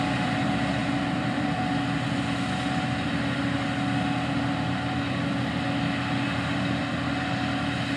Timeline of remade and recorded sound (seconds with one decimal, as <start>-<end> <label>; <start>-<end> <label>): 0.0-0.8 recorded; 0.8-1.6 remade; 1.6-8.0 recorded